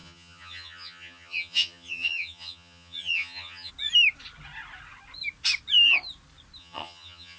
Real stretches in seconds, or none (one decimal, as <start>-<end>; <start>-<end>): 3.7-6.6